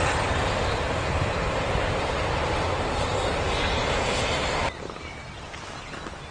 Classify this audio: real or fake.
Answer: real